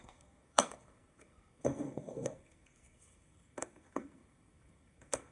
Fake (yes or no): yes